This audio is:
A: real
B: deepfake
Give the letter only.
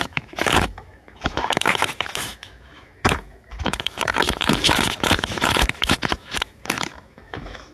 B